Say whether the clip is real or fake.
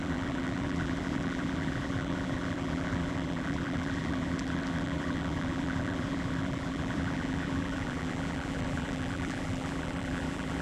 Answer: fake